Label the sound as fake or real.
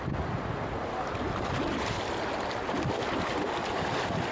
real